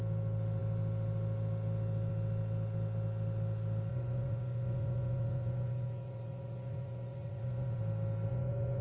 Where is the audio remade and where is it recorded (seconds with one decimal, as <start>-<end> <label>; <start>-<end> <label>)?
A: 0.0-3.9 recorded; 3.9-7.8 remade; 7.8-8.3 recorded; 8.3-8.8 remade